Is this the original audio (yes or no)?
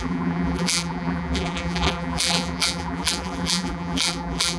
no